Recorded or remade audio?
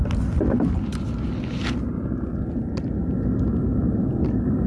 recorded